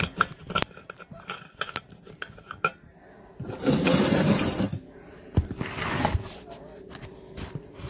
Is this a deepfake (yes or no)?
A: no